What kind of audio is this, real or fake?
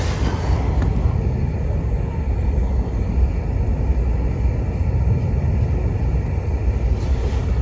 real